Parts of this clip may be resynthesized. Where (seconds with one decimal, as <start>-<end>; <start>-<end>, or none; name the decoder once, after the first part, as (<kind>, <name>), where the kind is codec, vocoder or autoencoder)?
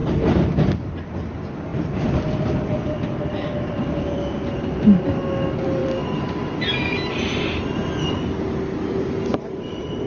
0.0-0.8 (vocoder, BigVGAN v2); 1.7-4.2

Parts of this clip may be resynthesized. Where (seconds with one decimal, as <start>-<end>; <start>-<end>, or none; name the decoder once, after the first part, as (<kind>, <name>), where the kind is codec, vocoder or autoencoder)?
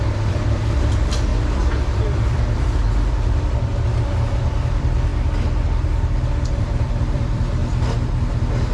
0.0-3.7 (vocoder, BigVGAN v2); 4.3-5.1; 6.6-7.6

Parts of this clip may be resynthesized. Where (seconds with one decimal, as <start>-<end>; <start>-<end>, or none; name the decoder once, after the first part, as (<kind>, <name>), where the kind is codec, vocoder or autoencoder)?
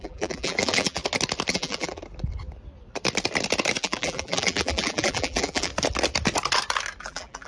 0.0-1.0 (vocoder, BigVGAN v2); 1.5-2.0; 3.8-5.7; 7.0-7.5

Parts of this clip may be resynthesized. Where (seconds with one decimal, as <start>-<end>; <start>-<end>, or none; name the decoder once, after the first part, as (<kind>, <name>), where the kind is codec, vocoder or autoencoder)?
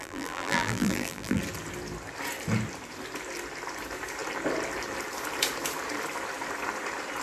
0.0-1.4 (vocoder, BigVGAN v2)